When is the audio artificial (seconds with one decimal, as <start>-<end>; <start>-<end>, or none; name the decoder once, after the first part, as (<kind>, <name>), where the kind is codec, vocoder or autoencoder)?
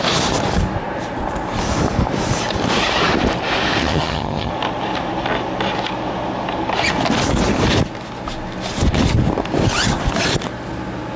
3.8-4.5 (vocoder, HiFi-GAN)